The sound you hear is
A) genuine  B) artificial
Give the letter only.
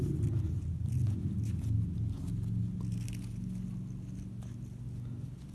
A